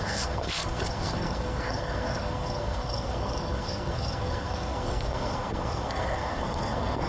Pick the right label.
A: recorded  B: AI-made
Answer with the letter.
B